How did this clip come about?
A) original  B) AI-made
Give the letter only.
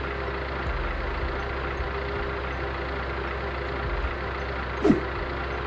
A